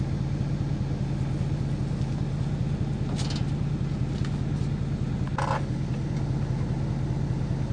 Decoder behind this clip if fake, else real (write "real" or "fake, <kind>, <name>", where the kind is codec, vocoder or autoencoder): real